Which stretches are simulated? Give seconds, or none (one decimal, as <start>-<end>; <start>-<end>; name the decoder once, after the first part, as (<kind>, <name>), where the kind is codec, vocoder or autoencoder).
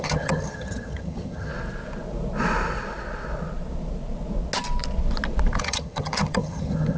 0.0-1.5 (vocoder, HiFi-GAN); 5.6-7.0